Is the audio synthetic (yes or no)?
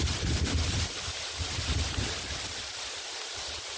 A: no